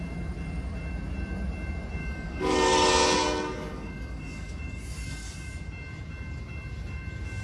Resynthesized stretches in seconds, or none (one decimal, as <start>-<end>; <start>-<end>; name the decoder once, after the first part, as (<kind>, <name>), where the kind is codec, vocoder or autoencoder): 2.0-2.9 (codec, DAC); 3.7-5.5